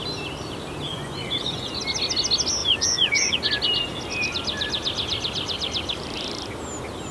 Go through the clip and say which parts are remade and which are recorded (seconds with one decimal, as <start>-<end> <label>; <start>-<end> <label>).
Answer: 0.0-0.9 recorded; 0.9-1.8 remade; 1.8-2.6 recorded; 2.6-3.5 remade; 3.5-7.1 recorded